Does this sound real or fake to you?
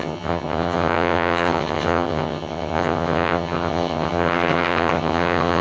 fake